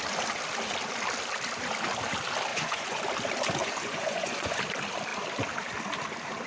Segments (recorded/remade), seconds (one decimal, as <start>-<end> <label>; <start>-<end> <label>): 0.0-2.5 recorded; 2.5-3.0 remade; 3.0-3.6 recorded; 3.6-4.6 remade; 4.6-6.5 recorded